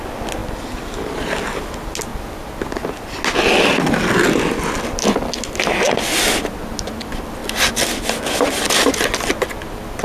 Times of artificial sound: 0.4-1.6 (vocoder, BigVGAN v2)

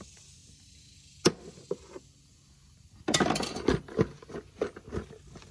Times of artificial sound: none

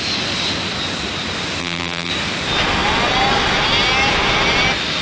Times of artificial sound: 1.6-2.1 (vocoder, BigVGAN v2)

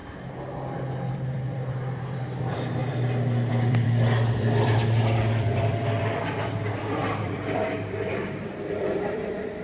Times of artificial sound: 1.1-9.6 (vocoder, BigVGAN v2)

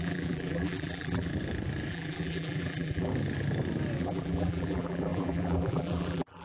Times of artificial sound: 0.0-1.3 (vocoder, BigVGAN v2); 1.9-3.1; 4.0-6.4

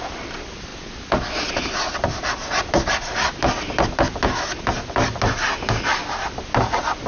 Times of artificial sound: none

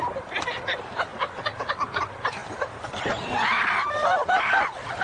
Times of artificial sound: 0.0-1.1 (vocoder, BigVGAN v2); 2.0-5.0

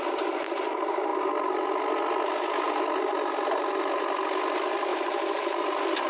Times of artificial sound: 4.9-5.6 (vocoder, BigVGAN v2)